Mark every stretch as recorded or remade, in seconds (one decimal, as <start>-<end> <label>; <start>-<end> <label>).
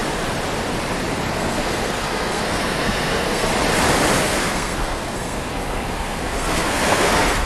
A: 0.0-1.3 recorded; 1.3-3.5 remade; 3.5-4.2 recorded; 4.2-7.5 remade